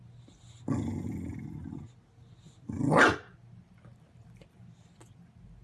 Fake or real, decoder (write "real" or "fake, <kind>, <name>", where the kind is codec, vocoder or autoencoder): real